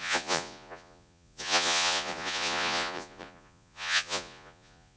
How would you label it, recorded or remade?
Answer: remade